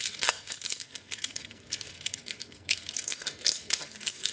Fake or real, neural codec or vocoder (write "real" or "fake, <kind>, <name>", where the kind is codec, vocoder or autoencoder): fake, codec, SNAC